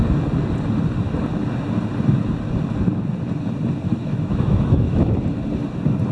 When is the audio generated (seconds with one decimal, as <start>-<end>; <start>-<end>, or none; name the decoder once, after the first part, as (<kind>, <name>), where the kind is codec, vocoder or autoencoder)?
4.0-5.1 (autoencoder, DAC-VAE)